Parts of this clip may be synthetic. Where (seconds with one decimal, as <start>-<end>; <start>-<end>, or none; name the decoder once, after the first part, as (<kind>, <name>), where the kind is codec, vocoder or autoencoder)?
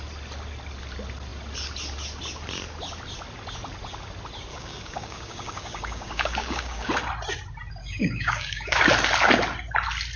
4.5-6.9 (codec, DAC); 7.8-8.8